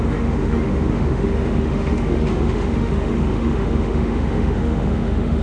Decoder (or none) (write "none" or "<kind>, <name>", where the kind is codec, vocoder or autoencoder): autoencoder, DAC-VAE